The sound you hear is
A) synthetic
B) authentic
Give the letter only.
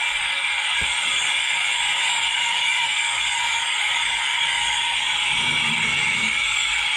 A